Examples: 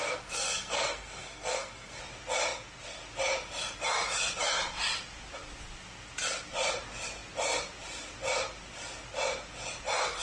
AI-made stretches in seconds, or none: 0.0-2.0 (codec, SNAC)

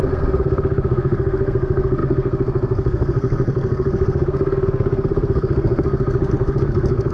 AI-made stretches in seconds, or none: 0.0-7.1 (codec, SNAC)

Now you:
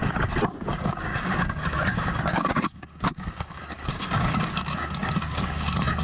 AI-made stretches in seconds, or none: 0.6-6.0 (codec, DAC)

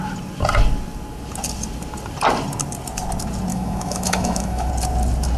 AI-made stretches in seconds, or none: 3.5-4.7 (autoencoder, DAC-VAE)

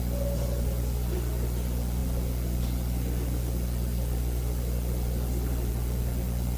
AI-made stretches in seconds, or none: none